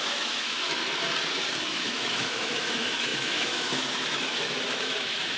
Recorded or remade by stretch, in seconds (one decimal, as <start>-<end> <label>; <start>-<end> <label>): 0.0-0.8 remade; 0.8-1.6 recorded; 1.6-5.4 remade

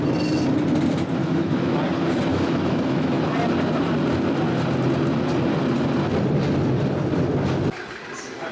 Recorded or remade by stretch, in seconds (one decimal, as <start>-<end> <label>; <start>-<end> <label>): 0.0-1.2 recorded; 1.2-1.8 remade; 1.8-2.3 recorded; 2.3-3.2 remade; 3.2-8.5 recorded

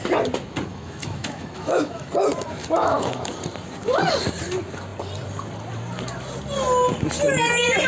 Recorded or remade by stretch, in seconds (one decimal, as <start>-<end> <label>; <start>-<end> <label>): 0.0-0.7 recorded; 0.7-2.1 remade; 2.1-2.6 recorded; 2.6-3.3 remade; 3.3-7.9 recorded

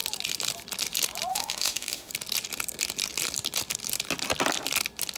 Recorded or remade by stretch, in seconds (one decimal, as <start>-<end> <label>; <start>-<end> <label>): 0.0-1.3 recorded; 1.3-2.1 remade; 2.1-5.2 recorded

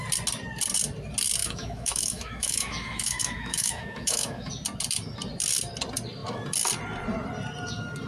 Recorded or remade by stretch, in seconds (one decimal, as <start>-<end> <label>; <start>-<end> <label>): 0.0-1.4 recorded; 1.4-4.5 remade; 4.5-8.1 recorded

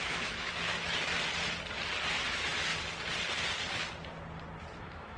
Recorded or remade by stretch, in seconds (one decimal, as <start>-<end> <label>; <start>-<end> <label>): 0.0-1.1 remade; 1.1-2.2 recorded; 2.2-2.7 remade; 2.7-4.8 recorded; 4.8-5.2 remade